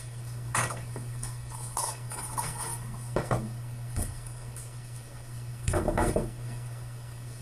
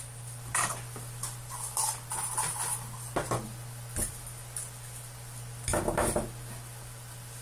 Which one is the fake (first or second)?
first